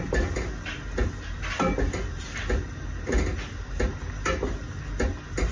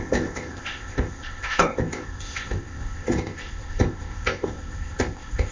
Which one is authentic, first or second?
first